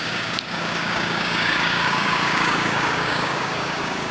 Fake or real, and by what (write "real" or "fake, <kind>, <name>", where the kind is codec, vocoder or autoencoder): fake, codec, DAC